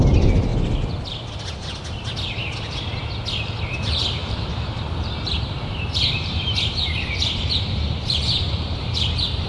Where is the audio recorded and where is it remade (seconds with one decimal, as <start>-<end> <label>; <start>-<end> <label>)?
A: 0.0-0.5 remade; 0.5-3.7 recorded; 3.7-9.5 remade